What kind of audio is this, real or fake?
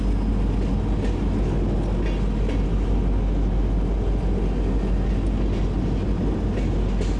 real